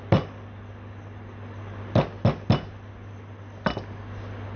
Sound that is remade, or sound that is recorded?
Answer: recorded